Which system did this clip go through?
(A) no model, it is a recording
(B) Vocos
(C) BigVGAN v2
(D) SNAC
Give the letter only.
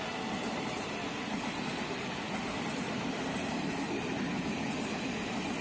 C